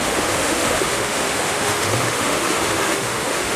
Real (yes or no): no